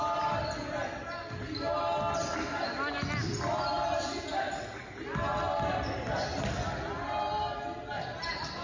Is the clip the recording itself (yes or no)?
yes